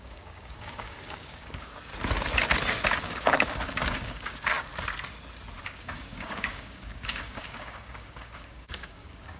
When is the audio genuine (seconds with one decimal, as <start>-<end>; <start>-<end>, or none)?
1.9-3.0; 4.7-5.6